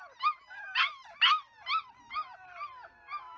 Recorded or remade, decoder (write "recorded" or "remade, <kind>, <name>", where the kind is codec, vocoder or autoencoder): recorded